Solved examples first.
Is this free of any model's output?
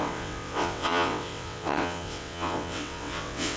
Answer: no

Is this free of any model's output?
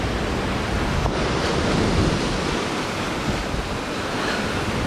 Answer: yes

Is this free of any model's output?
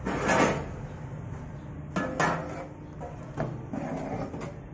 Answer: yes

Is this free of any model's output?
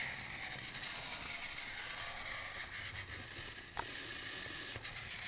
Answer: yes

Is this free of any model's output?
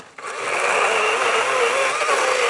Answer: yes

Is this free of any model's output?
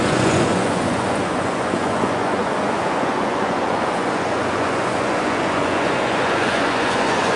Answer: no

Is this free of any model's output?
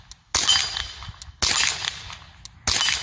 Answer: yes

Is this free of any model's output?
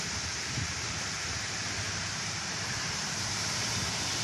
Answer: no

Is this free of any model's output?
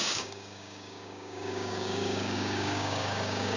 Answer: no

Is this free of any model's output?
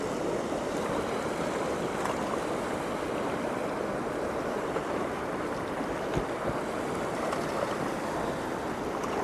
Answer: yes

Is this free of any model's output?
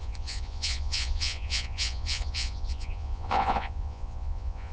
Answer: no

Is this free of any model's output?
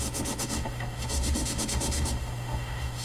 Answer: no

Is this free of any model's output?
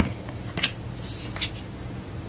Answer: yes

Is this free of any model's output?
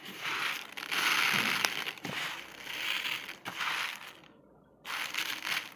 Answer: no